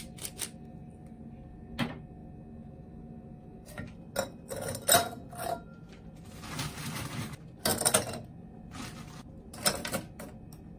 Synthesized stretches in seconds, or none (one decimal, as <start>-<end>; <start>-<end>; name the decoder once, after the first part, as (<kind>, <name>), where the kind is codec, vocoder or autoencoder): none